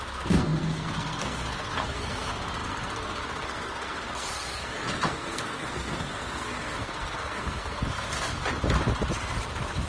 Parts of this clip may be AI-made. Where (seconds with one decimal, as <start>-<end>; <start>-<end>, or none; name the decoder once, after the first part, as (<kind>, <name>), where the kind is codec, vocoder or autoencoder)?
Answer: 0.0-8.4 (codec, SNAC)